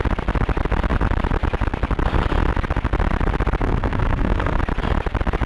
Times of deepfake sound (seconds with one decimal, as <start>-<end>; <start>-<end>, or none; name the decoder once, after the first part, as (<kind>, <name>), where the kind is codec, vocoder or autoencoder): 3.6-4.6 (codec, SNAC)